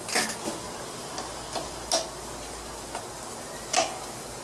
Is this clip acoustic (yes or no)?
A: yes